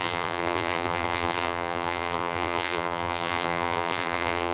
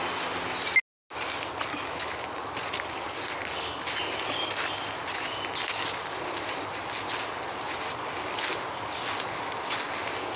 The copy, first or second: first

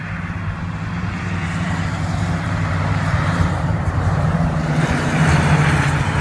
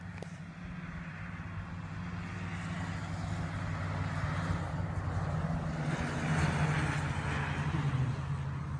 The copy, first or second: first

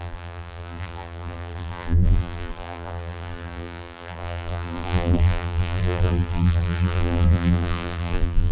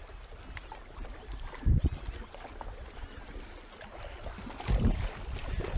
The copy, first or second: first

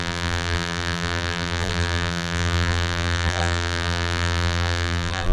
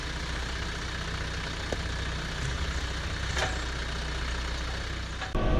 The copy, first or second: first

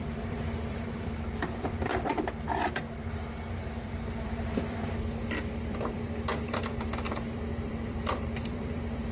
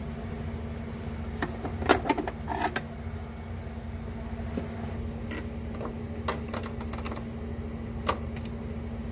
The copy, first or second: first